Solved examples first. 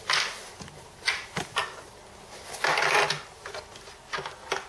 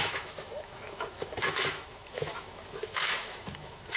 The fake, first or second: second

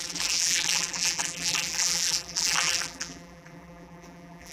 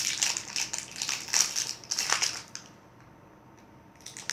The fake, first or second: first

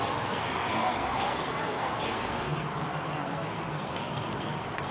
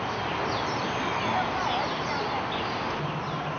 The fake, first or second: first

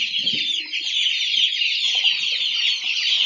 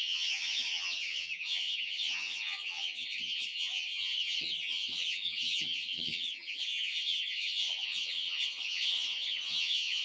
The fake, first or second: second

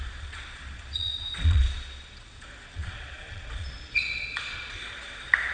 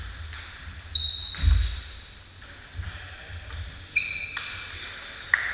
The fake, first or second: first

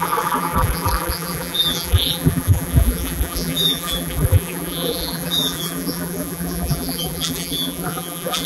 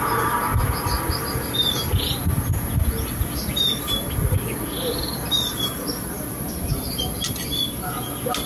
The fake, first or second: first